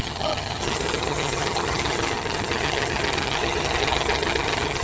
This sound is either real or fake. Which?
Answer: fake